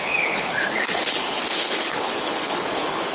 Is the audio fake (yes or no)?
yes